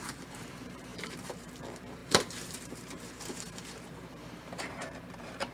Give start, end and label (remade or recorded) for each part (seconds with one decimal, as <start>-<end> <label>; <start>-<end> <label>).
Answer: 0.0-5.5 remade